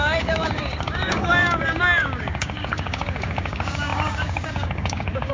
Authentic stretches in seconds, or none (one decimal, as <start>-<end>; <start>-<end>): none